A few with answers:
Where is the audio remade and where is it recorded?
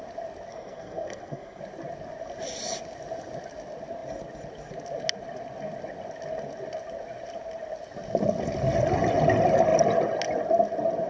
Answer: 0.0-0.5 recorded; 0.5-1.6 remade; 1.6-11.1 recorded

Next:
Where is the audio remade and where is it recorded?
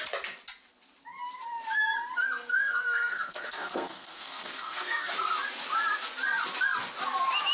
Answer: 0.0-2.5 recorded; 2.5-5.1 remade; 5.1-7.5 recorded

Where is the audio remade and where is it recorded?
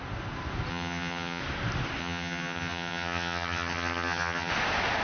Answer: 0.0-0.7 recorded; 0.7-1.4 remade; 1.4-2.0 recorded; 2.0-4.5 remade; 4.5-5.0 recorded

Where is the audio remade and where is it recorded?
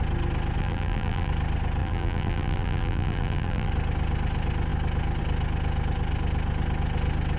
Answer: 0.0-0.6 recorded; 0.6-1.3 remade; 1.3-1.8 recorded; 1.8-3.7 remade; 3.7-7.4 recorded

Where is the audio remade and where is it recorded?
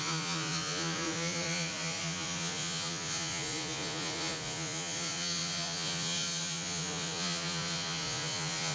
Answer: 0.0-8.7 remade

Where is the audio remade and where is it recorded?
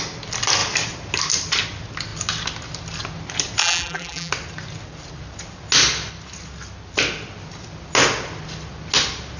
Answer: 0.0-3.6 recorded; 3.6-4.3 remade; 4.3-9.4 recorded